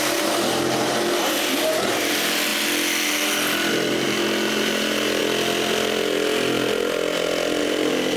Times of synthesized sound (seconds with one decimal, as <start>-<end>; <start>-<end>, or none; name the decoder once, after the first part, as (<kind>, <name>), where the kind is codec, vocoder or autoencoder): 0.0-2.5 (vocoder, BigVGAN v2); 3.7-5.2; 7.6-8.2